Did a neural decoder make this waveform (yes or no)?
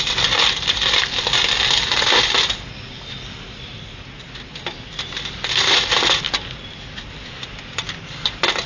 no